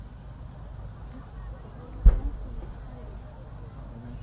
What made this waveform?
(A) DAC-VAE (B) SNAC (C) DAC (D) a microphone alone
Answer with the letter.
D